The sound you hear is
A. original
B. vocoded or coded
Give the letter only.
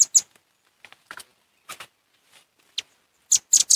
A